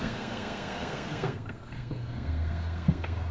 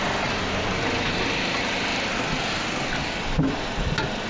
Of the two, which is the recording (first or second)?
second